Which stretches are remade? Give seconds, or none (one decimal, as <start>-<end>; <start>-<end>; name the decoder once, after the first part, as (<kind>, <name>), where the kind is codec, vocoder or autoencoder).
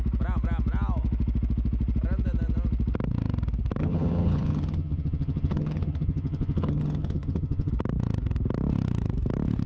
3.8-7.7 (vocoder, HiFi-GAN)